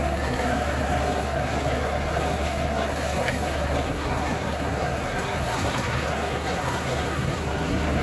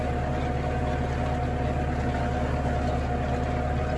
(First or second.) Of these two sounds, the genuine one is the second